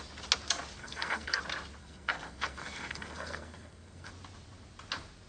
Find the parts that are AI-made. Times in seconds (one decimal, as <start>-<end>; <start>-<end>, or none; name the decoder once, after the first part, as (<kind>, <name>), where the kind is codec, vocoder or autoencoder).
0.8-1.4 (codec, SNAC); 1.8-4.1